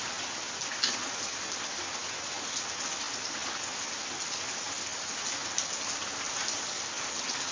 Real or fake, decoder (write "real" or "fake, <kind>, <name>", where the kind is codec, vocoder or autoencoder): real